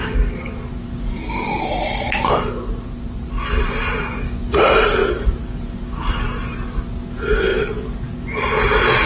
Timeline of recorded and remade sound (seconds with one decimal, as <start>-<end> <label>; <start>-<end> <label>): 0.0-5.0 recorded; 5.0-5.6 remade; 5.6-7.5 recorded; 7.5-8.5 remade; 8.5-9.1 recorded